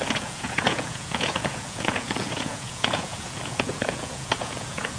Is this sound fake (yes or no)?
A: yes